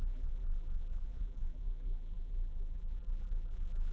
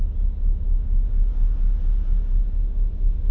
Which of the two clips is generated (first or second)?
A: first